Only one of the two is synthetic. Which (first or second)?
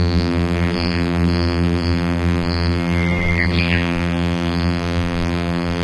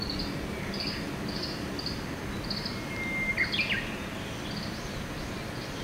first